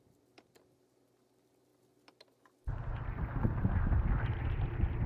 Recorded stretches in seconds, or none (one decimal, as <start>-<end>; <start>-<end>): 0.0-5.1